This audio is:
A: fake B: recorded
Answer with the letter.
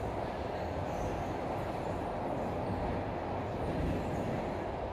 B